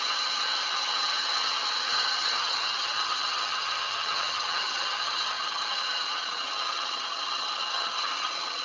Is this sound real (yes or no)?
no